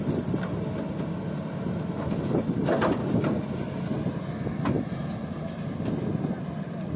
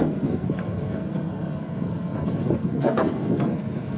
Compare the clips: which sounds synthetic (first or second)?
second